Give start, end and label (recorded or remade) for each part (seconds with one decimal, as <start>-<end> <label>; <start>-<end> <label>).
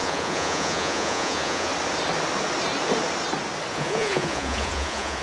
0.0-1.7 remade; 1.7-3.7 recorded; 3.7-5.2 remade